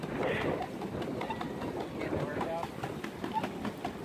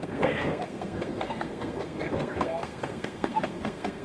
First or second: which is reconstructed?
second